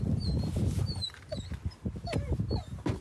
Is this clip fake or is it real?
real